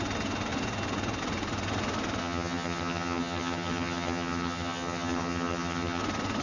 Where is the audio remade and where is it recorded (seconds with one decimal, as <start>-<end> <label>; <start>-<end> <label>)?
0.0-2.2 recorded; 2.2-6.0 remade; 6.0-6.4 recorded